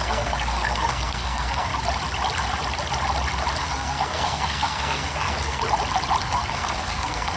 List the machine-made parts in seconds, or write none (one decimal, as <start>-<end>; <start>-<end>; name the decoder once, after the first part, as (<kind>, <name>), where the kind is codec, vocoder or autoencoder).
0.0-1.7 (codec, SNAC); 3.6-5.6; 6.2-7.4